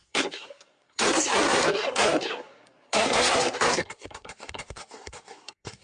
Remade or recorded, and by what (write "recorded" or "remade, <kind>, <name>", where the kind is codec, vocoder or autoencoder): remade, codec, SNAC